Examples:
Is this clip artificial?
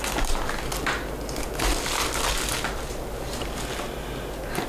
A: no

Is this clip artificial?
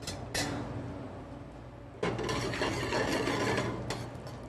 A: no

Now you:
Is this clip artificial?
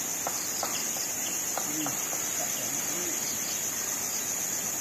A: no